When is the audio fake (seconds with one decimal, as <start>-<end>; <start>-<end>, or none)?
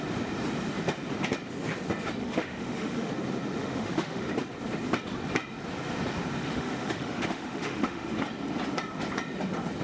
2.2-3.1; 3.5-4.3; 6.4-8.1